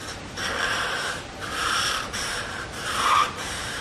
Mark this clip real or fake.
fake